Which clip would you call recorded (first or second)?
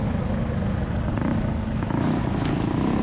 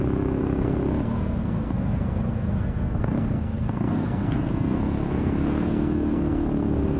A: first